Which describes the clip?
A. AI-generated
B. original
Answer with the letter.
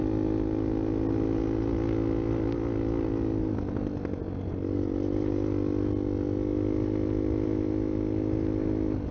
B